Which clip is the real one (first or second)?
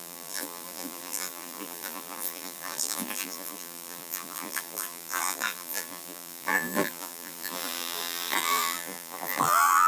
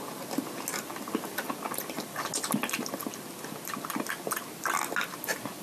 second